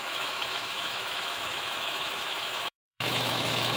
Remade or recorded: remade